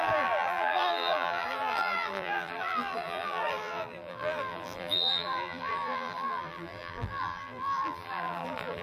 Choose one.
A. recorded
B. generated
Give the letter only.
B